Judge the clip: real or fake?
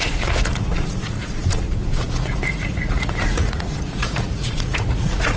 fake